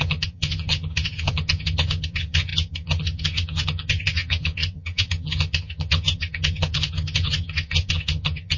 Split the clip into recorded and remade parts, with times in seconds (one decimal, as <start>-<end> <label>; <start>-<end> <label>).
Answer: 0.0-8.6 remade